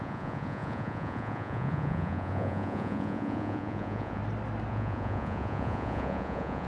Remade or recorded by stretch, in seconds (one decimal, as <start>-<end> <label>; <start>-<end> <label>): 0.0-4.2 remade; 4.2-4.7 recorded; 4.7-6.7 remade